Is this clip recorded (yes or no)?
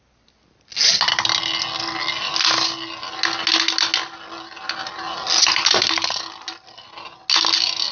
yes